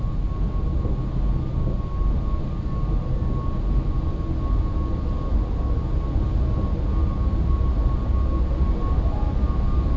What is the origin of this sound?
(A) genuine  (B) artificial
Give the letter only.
A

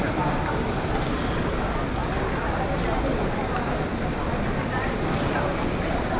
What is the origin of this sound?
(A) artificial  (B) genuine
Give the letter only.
A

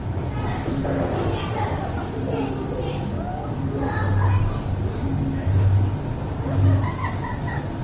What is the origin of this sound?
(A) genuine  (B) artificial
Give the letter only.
A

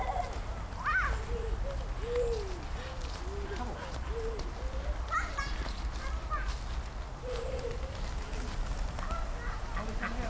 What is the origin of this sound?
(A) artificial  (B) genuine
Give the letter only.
B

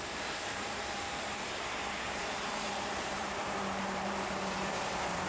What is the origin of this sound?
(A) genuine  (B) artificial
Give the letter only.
B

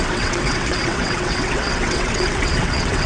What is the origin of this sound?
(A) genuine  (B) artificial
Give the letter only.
B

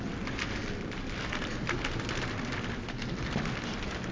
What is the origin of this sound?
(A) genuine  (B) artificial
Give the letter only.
A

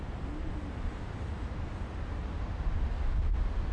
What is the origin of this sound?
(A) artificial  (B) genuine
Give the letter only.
B